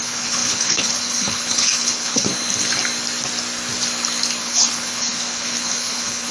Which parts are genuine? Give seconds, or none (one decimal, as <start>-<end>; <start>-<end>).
2.3-4.4